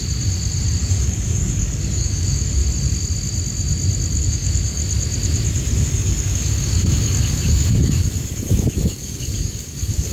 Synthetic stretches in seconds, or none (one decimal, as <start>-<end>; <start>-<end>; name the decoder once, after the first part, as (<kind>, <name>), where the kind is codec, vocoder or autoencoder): 0.8-2.6 (codec, DAC); 4.2-4.8; 5.8-10.1